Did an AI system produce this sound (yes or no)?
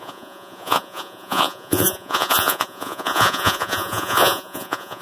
yes